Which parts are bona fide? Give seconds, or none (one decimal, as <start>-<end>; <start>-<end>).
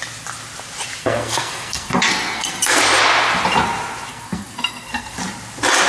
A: 0.0-1.0; 2.8-4.1; 5.2-5.9